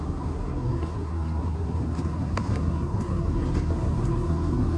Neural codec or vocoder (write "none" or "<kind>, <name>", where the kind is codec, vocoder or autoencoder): codec, SNAC